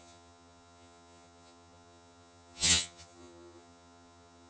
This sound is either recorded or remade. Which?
remade